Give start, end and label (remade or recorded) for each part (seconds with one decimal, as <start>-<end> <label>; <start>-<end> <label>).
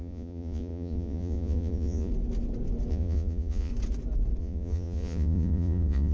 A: 0.0-2.1 remade; 2.1-2.9 recorded; 2.9-3.7 remade; 3.7-4.4 recorded; 4.4-6.1 remade